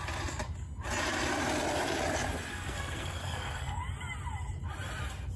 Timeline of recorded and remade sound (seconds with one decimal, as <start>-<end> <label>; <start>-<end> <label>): 0.0-2.5 recorded; 2.5-3.8 remade; 3.8-5.4 recorded